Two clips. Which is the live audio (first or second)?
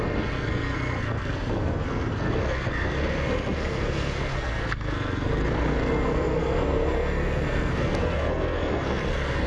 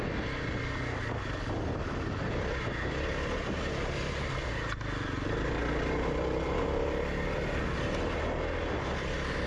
second